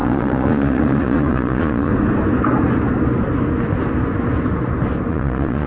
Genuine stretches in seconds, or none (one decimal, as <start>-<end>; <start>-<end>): 1.9-5.1

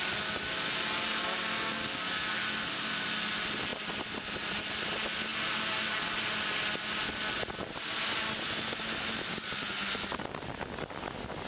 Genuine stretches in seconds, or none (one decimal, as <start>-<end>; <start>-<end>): 0.0-11.5

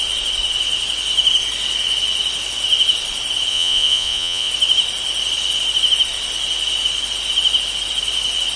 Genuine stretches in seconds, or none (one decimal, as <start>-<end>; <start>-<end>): 0.0-3.5; 4.5-8.6

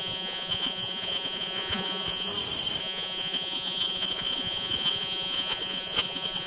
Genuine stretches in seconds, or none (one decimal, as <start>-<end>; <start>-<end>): 2.3-2.8

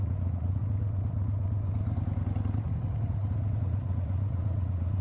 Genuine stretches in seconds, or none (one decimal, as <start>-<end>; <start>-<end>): 0.6-3.6

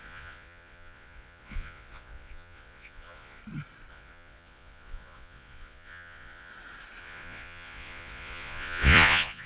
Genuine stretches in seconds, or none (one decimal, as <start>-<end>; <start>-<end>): 3.4-3.9; 6.5-7.0

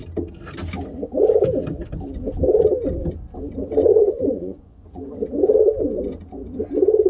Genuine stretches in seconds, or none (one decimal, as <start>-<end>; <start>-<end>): 0.0-3.9; 5.1-7.1

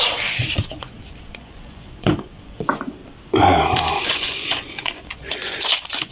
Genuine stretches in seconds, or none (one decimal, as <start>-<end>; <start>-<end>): 3.0-4.0